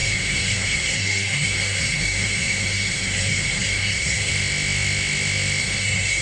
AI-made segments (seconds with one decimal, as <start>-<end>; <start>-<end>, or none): 0.0-4.3; 5.6-6.2